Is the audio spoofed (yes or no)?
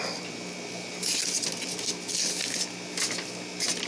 no